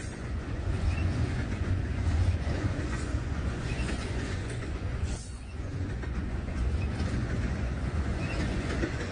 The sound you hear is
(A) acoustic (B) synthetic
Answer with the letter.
B